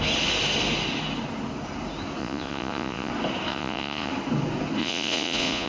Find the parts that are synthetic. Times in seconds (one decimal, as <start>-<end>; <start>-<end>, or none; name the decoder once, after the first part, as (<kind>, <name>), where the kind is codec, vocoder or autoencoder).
2.2-3.1 (vocoder, Vocos); 3.5-4.1; 4.8-5.7